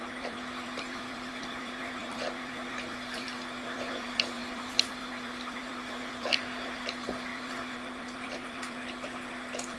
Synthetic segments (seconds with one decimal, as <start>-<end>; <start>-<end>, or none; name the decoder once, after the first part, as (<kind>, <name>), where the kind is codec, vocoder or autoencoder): 0.0-9.8 (vocoder, BigVGAN v2)